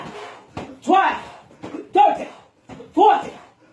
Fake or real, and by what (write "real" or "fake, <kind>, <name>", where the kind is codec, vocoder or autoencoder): real